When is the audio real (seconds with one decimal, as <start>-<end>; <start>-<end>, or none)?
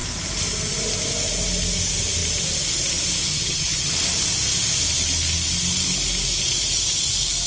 0.0-3.3; 3.9-7.5